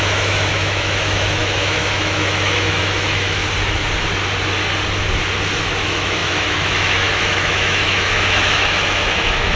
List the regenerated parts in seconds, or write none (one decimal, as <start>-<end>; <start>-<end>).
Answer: 0.0-3.4; 5.6-9.6

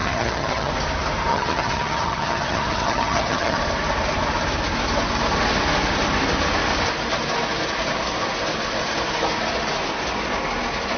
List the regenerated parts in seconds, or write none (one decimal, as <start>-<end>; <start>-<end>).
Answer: 0.0-0.7; 1.3-3.6

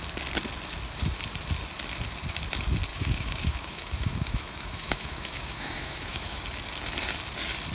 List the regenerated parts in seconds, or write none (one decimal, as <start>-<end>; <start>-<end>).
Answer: 2.9-6.4

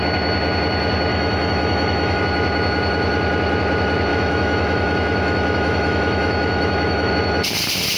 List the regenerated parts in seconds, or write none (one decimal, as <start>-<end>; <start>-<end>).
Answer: 1.1-2.2; 4.1-7.1

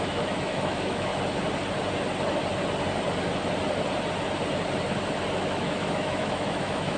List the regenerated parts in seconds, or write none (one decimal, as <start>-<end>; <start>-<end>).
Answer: 0.0-1.1; 5.3-7.0

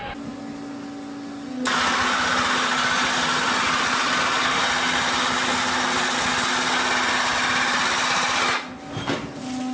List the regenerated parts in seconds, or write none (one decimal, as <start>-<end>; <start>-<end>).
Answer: none

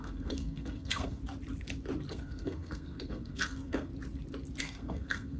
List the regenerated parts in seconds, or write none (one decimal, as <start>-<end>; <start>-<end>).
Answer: 0.0-1.2; 2.1-3.9; 4.6-5.4